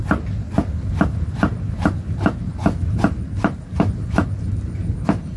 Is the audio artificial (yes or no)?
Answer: no